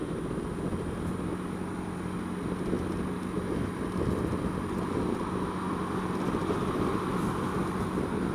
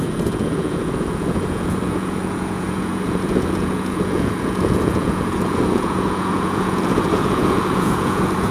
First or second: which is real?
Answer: first